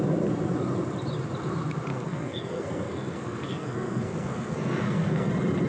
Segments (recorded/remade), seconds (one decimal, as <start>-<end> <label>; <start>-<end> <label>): 0.0-1.9 recorded; 1.9-5.3 remade; 5.3-5.7 recorded